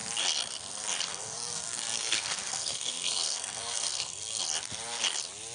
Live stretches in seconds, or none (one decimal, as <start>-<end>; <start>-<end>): 0.0-1.1; 4.4-5.5